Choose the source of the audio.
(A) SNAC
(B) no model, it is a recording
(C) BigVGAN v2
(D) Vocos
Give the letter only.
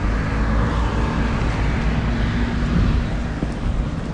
B